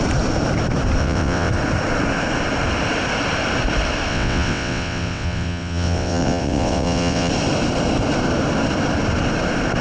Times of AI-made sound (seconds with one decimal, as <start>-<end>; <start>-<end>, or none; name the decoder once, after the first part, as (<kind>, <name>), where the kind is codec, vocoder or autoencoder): 1.0-1.5 (vocoder, WaveNeXt); 4.1-7.3